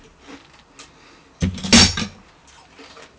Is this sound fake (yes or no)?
no